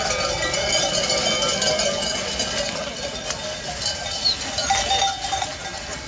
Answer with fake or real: real